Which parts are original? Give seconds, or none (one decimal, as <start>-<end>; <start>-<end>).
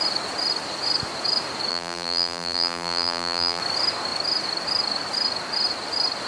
0.0-1.7; 3.6-6.3